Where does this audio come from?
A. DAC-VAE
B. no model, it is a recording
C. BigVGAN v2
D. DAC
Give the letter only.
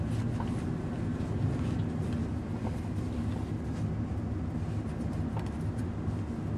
B